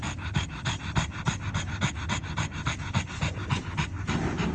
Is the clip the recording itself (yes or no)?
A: yes